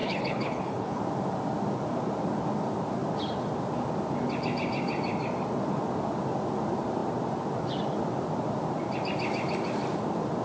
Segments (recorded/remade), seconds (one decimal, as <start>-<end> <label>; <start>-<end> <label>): 0.0-1.0 remade; 1.0-10.4 recorded